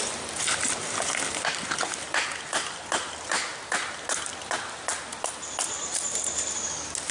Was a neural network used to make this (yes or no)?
no